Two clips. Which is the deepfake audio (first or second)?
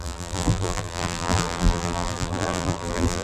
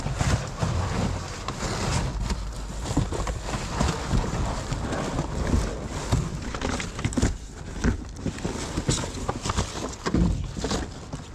first